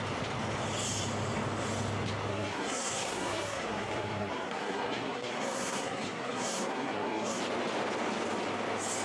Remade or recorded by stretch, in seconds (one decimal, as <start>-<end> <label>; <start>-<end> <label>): 0.0-2.3 recorded; 2.3-7.4 remade; 7.4-9.0 recorded